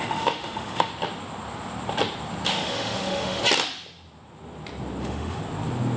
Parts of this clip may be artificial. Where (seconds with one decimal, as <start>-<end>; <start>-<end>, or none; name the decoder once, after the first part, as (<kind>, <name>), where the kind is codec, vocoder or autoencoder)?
0.0-0.9 (autoencoder, DAC-VAE); 2.5-3.4; 5.0-5.4